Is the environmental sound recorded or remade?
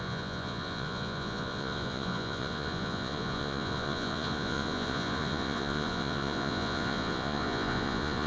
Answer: remade